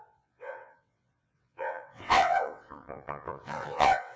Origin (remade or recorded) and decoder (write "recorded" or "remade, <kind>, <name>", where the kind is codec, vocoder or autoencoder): remade, vocoder, WaveNeXt